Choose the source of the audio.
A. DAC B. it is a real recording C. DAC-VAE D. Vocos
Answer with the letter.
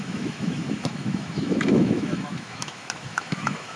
C